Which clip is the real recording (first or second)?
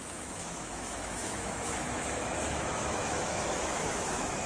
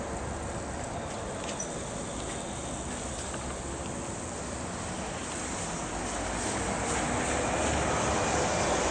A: second